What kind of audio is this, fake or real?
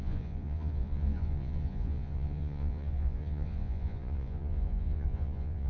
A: fake